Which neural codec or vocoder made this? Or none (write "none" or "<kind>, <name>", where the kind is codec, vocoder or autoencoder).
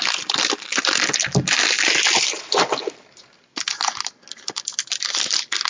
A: none